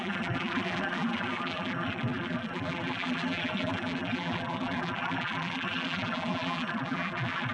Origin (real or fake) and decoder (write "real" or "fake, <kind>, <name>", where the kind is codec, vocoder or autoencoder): fake, vocoder, BigVGAN v2